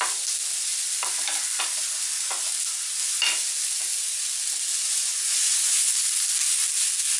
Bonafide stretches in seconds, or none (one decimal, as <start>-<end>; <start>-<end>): 0.0-4.7; 5.9-7.2